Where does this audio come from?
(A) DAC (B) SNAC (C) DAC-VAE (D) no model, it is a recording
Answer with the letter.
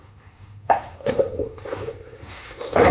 B